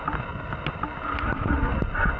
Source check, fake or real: real